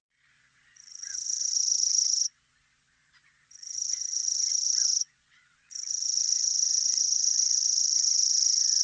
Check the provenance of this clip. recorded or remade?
remade